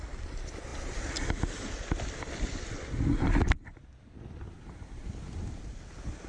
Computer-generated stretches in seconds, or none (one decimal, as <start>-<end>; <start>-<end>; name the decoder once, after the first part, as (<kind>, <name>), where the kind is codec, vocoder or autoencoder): none